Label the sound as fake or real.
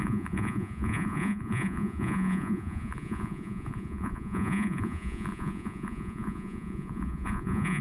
fake